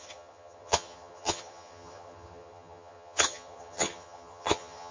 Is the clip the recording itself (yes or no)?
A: no